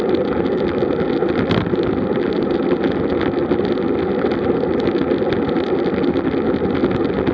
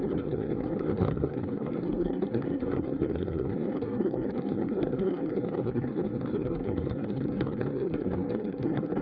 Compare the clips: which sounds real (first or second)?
first